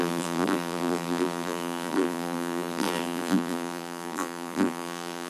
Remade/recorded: remade